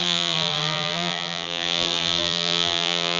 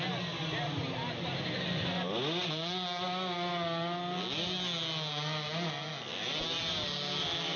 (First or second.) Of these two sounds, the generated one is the first